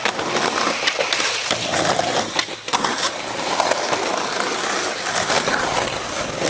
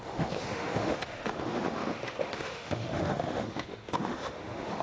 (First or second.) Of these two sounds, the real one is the first